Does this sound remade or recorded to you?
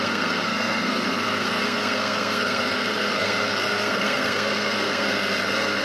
remade